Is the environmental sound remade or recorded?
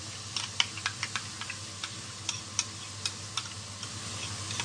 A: recorded